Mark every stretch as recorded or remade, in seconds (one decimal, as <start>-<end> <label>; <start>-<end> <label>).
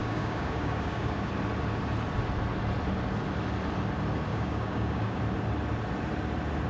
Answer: 0.0-1.3 remade; 1.3-4.3 recorded; 4.3-5.2 remade; 5.2-6.7 recorded